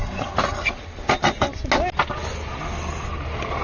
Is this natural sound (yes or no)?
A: yes